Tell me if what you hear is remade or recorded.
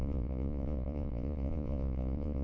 remade